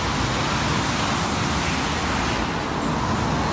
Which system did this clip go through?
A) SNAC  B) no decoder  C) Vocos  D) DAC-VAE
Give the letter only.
B